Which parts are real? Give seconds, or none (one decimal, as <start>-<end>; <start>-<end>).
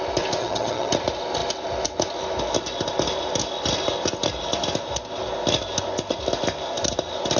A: 0.0-0.4; 0.9-7.4